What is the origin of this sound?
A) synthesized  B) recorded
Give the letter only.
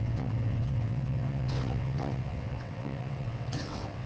A